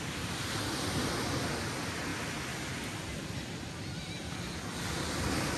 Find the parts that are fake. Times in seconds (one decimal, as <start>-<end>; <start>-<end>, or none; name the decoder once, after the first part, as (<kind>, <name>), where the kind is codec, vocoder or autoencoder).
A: none